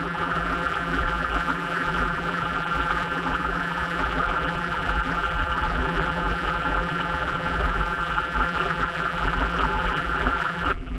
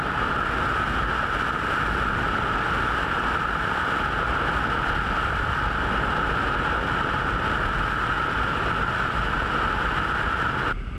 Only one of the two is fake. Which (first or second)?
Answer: first